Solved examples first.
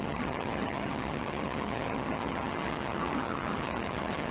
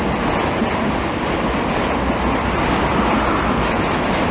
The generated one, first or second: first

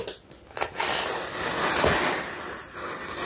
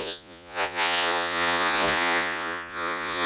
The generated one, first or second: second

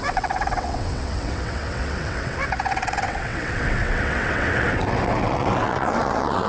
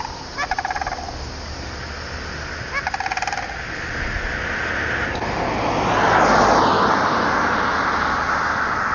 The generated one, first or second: first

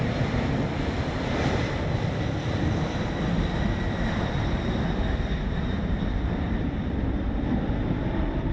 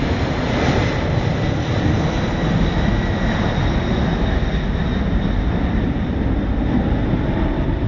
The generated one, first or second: first